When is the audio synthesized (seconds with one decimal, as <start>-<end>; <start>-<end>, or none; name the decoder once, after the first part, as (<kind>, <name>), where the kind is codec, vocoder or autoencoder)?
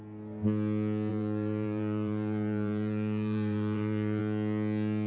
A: 1.1-4.2 (vocoder, BigVGAN v2)